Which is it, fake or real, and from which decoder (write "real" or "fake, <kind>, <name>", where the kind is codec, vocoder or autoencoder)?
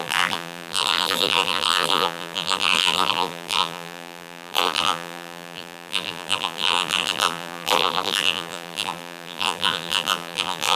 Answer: fake, vocoder, BigVGAN v2